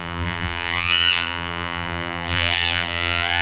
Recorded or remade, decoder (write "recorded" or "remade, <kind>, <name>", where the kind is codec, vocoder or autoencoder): remade, vocoder, BigVGAN v2